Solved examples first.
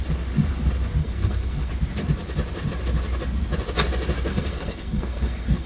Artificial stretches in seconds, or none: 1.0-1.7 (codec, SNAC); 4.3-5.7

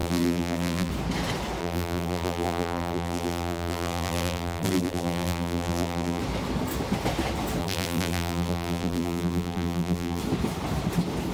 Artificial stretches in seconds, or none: 0.0-0.9 (vocoder, BigVGAN v2); 1.6-6.2; 7.6-10.2

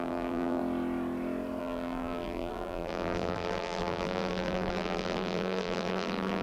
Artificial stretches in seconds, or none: 0.0-0.6 (vocoder, BigVGAN v2); 1.6-6.4

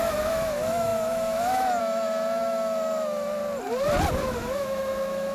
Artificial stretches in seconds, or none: 0.0-3.4 (autoencoder, DAC-VAE); 4.1-5.3

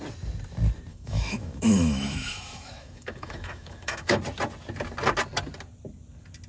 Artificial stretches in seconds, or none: 0.9-4.2 (autoencoder, DAC-VAE)

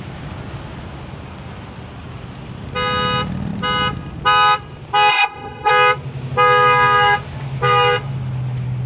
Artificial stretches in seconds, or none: 5.1-5.7 (codec, ZipCodec)

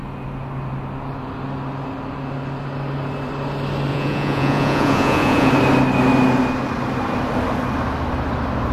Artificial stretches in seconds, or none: 3.9-5.5 (vocoder, Vocos)

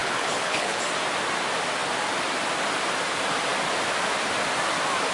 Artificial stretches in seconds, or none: 0.0-0.8 (codec, HILCodec)